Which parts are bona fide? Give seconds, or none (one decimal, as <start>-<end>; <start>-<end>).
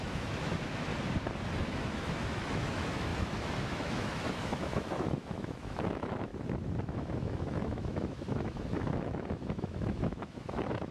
0.9-1.6; 6.3-6.8